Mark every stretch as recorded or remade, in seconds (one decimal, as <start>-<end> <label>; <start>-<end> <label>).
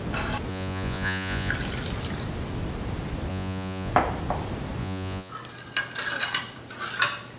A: 0.0-0.5 recorded; 0.5-1.5 remade; 1.5-3.3 recorded; 3.3-3.9 remade; 3.9-4.8 recorded; 4.8-5.3 remade; 5.3-7.4 recorded